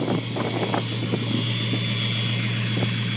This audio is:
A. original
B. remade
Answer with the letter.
A